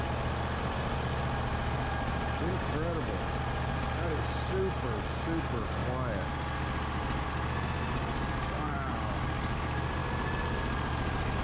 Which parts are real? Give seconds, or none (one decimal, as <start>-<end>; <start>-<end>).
0.0-11.4

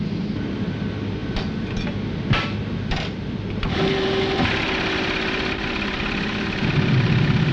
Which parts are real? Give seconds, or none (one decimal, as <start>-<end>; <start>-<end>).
0.0-7.5

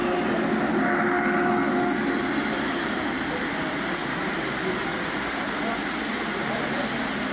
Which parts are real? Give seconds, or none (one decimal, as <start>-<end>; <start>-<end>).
0.0-2.6; 4.0-5.1

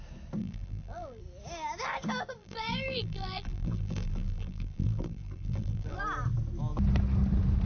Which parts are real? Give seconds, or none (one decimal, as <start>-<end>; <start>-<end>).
0.0-0.4; 1.2-2.4; 6.0-7.7

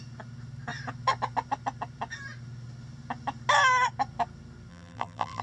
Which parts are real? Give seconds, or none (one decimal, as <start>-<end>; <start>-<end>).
0.0-4.7

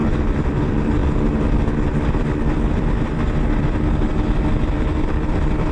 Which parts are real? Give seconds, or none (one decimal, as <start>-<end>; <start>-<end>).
none

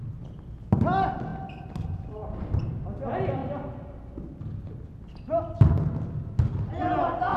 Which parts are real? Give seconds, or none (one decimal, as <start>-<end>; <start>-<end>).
0.0-3.4; 4.7-7.4

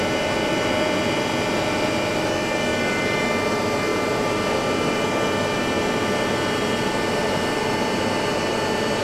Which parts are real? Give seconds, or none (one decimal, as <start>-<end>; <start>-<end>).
0.0-9.0